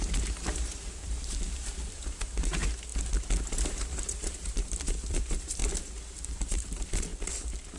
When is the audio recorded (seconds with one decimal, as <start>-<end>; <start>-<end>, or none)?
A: 2.9-3.5; 5.6-6.3; 7.1-7.8